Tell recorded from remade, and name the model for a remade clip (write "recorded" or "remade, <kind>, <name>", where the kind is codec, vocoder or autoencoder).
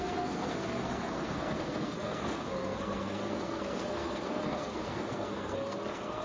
remade, codec, SNAC